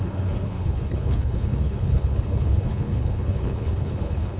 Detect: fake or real fake